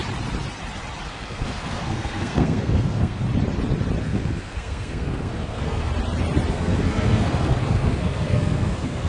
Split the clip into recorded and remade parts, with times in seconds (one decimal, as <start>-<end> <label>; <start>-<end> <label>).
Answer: 0.0-1.1 recorded; 1.1-3.2 remade; 3.2-4.0 recorded; 4.0-5.9 remade; 5.9-6.5 recorded; 6.5-9.1 remade